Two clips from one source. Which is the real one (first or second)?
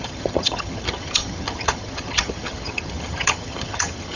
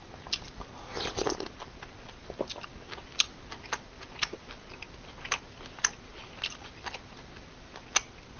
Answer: second